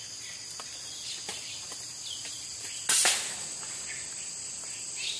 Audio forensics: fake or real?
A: real